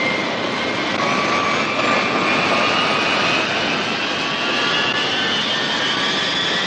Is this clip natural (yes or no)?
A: yes